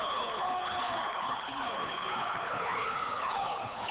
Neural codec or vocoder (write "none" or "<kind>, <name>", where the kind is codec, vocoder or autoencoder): codec, HILCodec